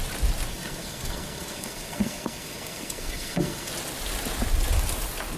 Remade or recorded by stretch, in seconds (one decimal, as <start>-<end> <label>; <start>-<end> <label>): 0.0-0.5 recorded; 0.5-3.7 remade; 3.7-5.4 recorded